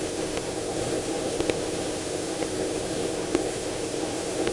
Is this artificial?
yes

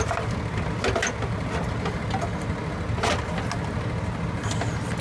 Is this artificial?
no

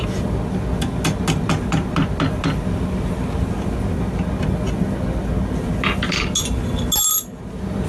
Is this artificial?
no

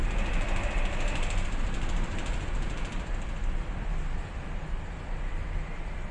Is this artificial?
no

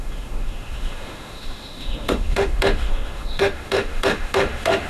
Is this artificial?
yes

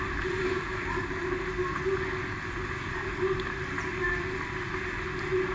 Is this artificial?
no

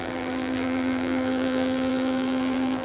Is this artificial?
yes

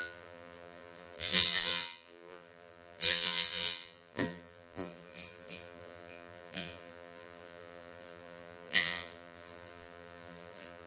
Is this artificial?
yes